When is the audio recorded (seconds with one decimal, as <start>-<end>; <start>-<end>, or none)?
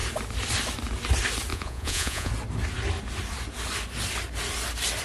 0.0-1.5; 2.3-5.0